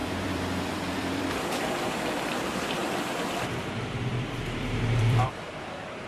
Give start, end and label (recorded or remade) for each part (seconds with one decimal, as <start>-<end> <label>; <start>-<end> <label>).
0.0-2.8 remade; 2.8-3.4 recorded; 3.4-6.1 remade